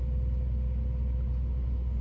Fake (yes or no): no